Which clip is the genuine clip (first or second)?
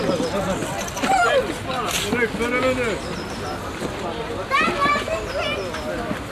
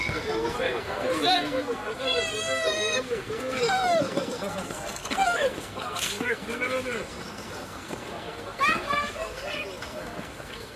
first